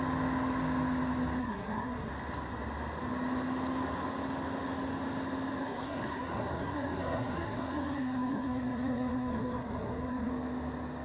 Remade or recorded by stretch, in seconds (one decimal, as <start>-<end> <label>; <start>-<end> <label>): 0.0-1.4 recorded; 1.4-2.1 remade; 2.1-5.6 recorded; 5.6-10.3 remade; 10.3-11.0 recorded